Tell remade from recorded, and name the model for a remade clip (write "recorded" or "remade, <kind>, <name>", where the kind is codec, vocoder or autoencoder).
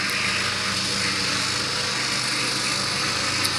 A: recorded